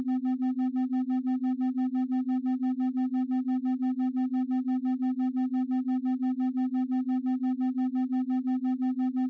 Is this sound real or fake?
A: real